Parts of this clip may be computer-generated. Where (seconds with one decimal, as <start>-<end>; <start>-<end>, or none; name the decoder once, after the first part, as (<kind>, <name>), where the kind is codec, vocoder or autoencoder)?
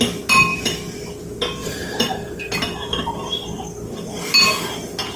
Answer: 1.6-2.5 (vocoder, BigVGAN v2)